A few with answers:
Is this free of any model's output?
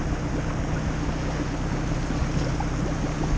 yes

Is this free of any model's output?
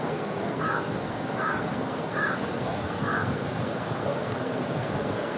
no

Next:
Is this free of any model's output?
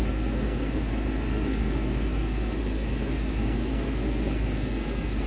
no